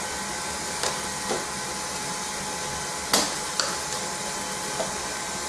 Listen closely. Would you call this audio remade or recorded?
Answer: recorded